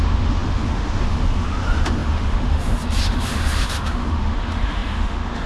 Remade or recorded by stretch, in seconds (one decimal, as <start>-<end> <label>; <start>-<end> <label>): 0.0-5.5 remade